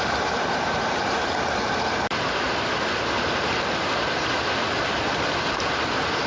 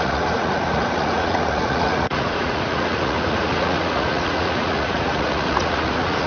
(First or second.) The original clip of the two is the first